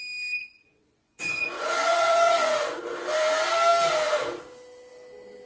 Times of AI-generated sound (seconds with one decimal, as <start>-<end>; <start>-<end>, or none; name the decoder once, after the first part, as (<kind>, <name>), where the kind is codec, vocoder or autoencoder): 0.4-2.8 (vocoder, Vocos)